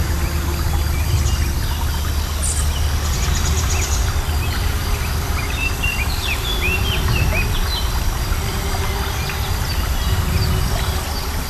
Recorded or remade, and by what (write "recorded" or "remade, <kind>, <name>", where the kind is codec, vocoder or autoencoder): recorded